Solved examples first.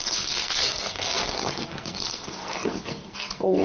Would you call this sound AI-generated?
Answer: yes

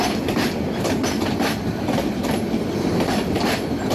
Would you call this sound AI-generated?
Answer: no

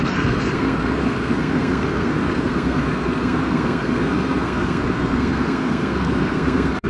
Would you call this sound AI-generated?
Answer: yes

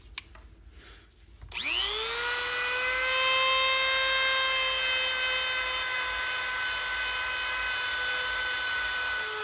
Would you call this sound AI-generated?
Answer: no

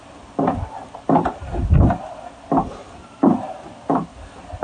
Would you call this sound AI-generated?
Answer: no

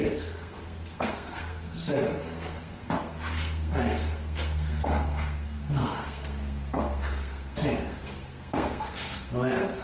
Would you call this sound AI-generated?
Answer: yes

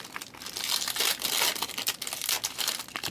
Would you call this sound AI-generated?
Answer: no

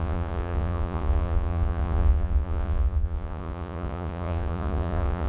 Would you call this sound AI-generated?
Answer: yes